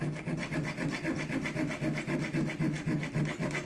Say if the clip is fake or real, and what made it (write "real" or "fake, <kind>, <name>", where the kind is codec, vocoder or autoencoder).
real